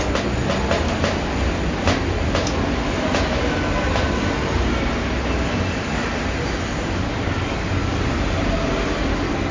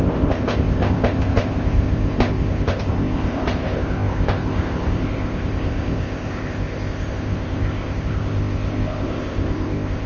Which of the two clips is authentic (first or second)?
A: first